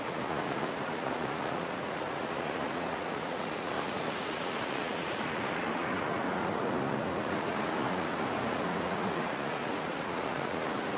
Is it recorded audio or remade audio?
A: remade